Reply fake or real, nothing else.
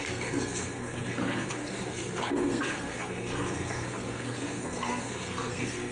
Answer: fake